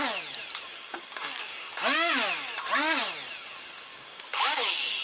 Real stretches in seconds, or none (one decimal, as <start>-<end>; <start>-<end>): 0.0-0.7; 1.7-3.9